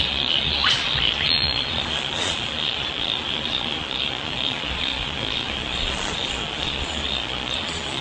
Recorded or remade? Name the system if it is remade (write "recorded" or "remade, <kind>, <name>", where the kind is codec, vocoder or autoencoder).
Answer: remade, vocoder, Vocos